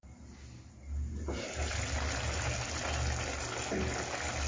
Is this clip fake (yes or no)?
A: no